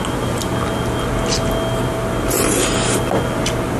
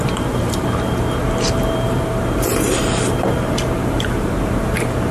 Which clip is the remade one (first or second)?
second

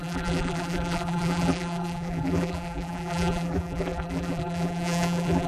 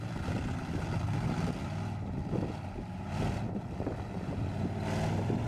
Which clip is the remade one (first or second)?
first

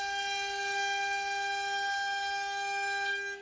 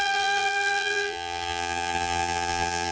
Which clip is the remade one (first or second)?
second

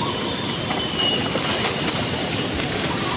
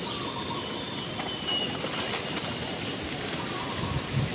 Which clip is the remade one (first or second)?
first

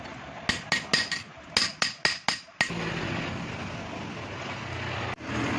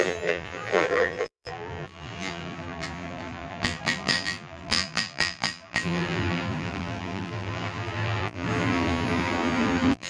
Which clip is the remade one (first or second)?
second